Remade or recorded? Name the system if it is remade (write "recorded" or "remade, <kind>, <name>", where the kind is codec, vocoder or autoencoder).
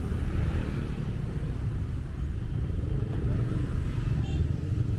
remade, vocoder, BigVGAN v2